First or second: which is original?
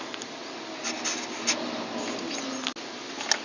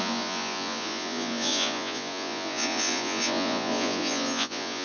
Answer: first